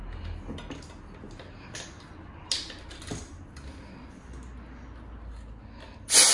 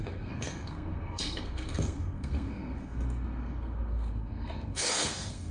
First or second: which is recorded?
first